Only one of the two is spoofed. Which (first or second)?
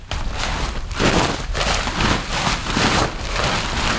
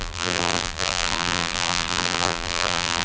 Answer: second